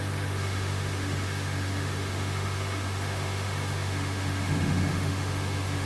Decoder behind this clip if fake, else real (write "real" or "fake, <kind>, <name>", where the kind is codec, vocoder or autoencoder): fake, autoencoder, DAC-VAE